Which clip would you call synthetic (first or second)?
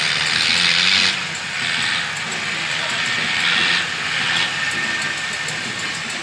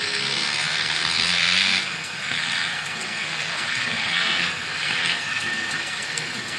second